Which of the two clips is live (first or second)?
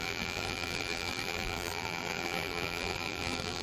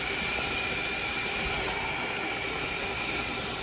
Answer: second